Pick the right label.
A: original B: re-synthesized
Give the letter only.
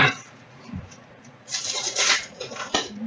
B